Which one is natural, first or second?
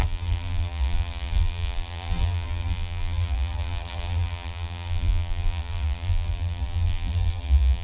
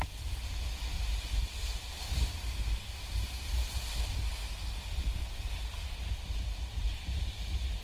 second